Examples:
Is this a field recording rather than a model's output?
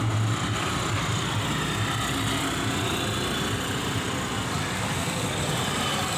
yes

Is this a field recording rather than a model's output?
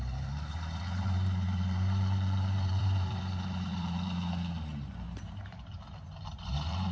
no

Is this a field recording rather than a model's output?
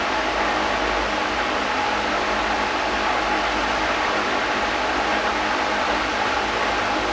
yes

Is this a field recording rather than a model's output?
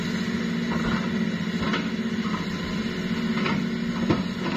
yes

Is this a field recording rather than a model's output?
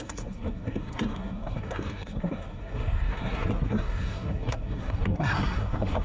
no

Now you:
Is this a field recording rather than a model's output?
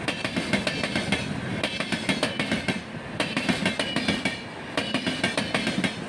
yes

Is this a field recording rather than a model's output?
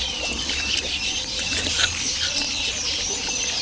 yes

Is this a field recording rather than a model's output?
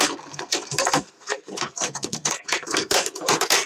no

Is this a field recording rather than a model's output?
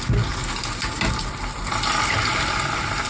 yes